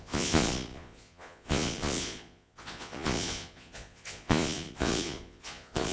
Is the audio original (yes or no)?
no